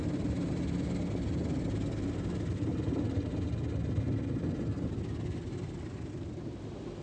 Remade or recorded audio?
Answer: recorded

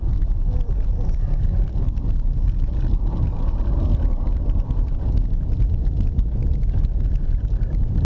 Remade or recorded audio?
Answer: remade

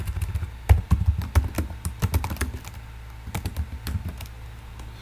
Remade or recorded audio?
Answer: recorded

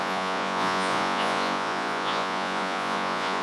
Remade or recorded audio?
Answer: remade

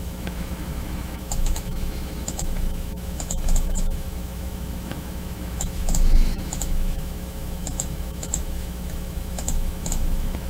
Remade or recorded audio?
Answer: remade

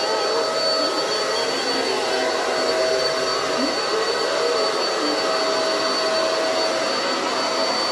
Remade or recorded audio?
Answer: recorded